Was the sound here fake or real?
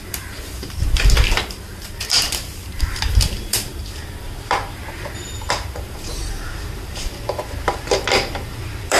fake